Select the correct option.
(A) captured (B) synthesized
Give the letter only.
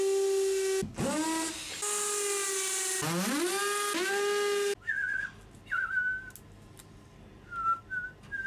A